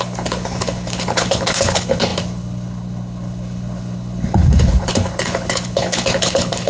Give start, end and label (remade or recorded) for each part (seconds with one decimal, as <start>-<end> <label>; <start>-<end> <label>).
0.0-6.7 remade